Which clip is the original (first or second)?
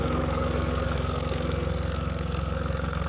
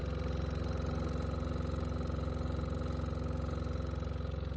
second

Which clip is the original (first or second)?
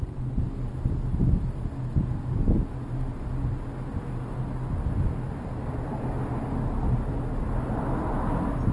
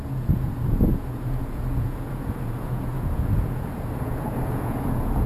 first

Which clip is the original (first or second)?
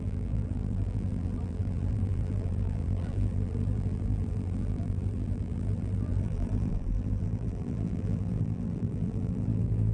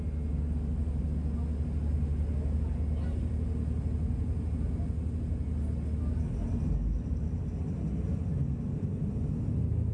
second